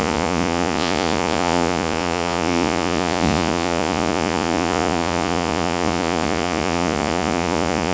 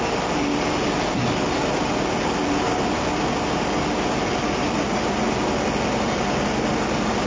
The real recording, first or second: second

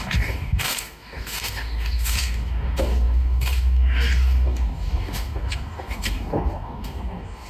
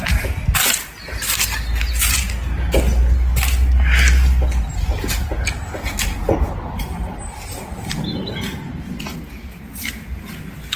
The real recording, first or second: second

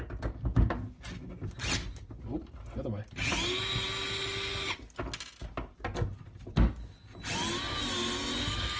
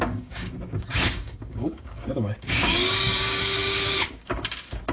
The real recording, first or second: first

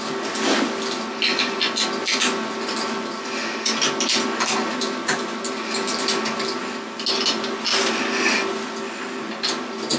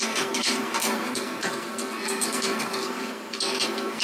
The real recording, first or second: first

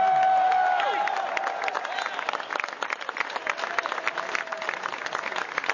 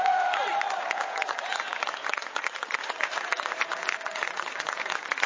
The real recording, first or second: first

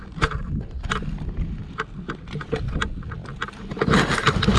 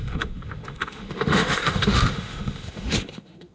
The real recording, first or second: first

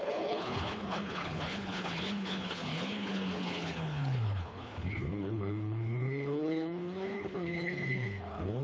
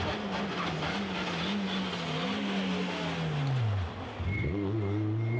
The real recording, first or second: second